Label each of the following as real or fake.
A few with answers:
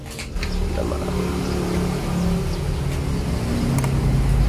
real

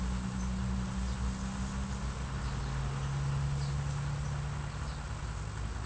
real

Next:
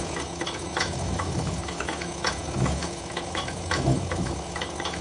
fake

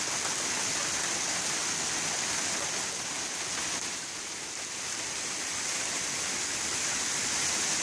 real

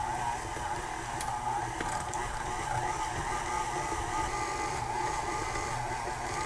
real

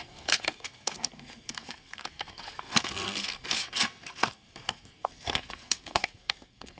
fake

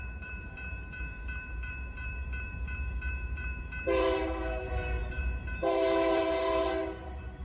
fake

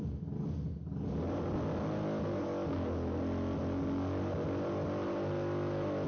real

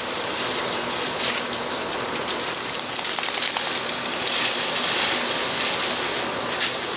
real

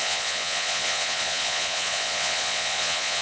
fake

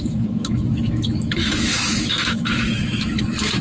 fake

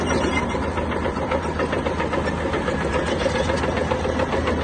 real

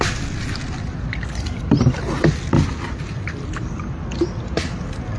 real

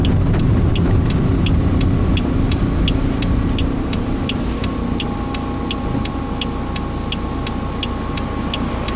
real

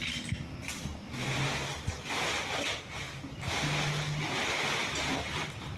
real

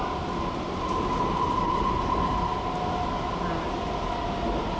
real